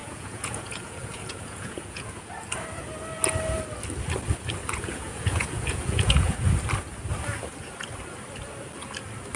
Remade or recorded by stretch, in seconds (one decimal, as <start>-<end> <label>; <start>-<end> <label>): 0.0-2.3 remade; 2.3-4.6 recorded; 4.6-6.5 remade; 6.5-9.4 recorded